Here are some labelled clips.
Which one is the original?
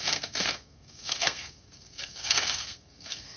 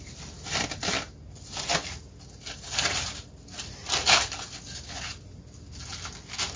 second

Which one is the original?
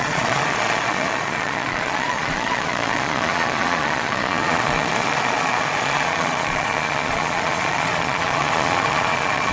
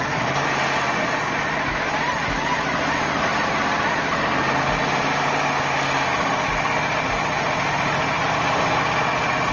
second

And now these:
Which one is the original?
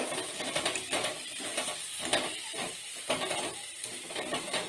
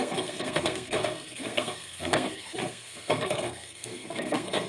first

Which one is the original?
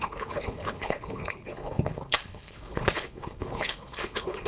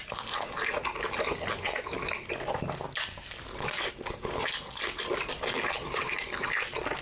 second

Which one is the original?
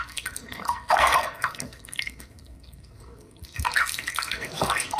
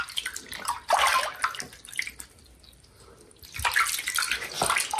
second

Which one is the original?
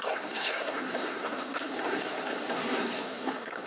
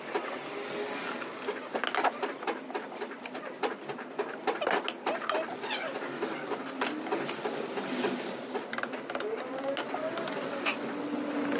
second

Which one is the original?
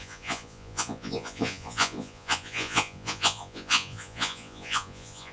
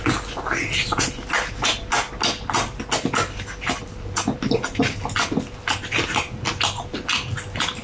second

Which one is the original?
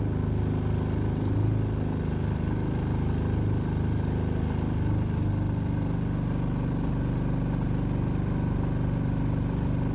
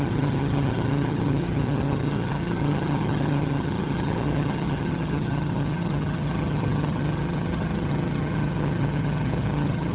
first